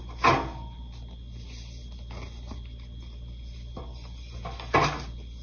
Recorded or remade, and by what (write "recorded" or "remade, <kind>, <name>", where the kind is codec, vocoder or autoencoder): recorded